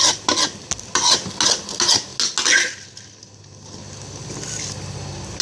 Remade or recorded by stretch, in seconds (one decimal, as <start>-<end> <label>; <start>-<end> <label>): 0.0-5.4 recorded